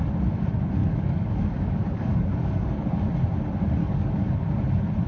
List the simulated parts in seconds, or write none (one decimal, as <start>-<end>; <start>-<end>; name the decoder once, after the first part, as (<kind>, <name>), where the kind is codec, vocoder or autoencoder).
0.8-2.9 (codec, DAC); 3.8-4.3